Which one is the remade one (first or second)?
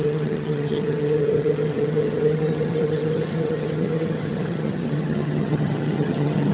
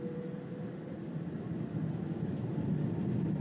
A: first